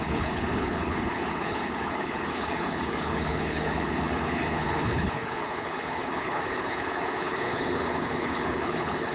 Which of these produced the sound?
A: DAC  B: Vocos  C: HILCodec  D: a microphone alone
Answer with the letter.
C